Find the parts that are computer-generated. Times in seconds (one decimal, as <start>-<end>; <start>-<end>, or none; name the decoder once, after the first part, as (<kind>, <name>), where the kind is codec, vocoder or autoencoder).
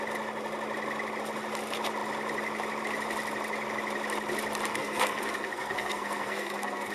4.7-6.9 (codec, SNAC)